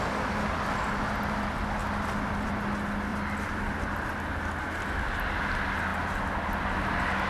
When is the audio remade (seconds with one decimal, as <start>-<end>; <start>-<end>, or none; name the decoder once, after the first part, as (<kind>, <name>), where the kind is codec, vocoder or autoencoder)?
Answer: 1.8-2.5 (vocoder, BigVGAN v2); 3.1-3.9